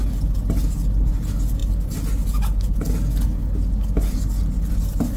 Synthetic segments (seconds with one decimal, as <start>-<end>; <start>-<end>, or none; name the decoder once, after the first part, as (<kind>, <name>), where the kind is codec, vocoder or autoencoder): none